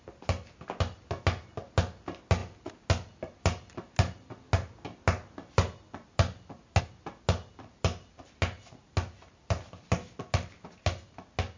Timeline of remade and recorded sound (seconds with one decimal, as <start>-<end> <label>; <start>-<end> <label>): 0.0-11.6 recorded